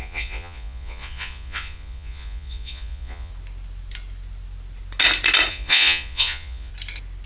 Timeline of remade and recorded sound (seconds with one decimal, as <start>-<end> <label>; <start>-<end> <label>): 0.0-3.3 remade; 3.3-5.5 recorded; 5.5-6.7 remade; 6.7-7.3 recorded